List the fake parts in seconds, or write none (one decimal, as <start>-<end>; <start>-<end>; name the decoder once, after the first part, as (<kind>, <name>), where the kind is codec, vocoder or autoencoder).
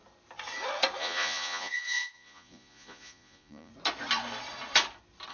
1.0-3.7 (vocoder, Vocos)